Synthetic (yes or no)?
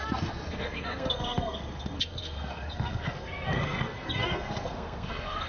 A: yes